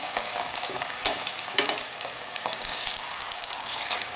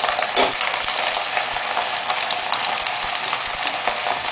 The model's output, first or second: first